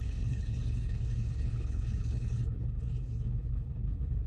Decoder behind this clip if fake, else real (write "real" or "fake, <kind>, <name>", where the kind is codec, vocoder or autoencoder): fake, codec, HILCodec